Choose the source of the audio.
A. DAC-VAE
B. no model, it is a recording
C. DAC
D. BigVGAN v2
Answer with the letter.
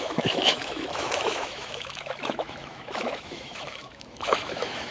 A